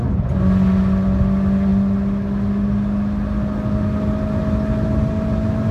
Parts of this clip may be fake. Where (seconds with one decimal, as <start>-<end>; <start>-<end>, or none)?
none